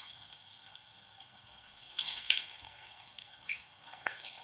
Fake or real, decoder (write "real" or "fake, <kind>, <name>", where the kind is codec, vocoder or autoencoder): fake, codec, SNAC